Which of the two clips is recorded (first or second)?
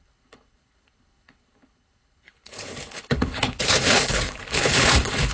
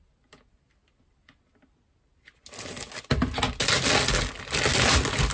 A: second